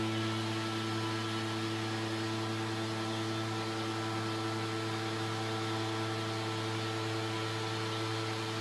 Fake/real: real